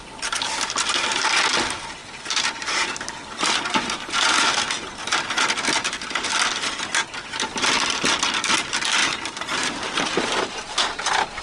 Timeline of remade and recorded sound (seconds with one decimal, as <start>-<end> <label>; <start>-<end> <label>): 0.0-2.0 recorded; 2.0-4.6 remade; 4.6-9.0 recorded; 9.0-11.4 remade